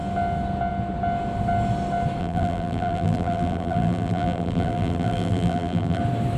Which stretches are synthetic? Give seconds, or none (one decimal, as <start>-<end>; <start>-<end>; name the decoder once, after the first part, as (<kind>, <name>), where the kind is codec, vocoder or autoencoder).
2.2-6.0 (vocoder, BigVGAN v2)